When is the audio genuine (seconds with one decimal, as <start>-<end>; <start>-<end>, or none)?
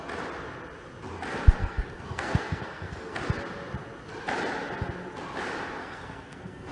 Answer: 0.0-1.6; 3.2-5.8